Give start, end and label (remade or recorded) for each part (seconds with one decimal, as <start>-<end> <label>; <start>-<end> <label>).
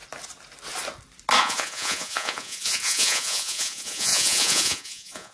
0.0-1.4 recorded; 1.4-5.3 remade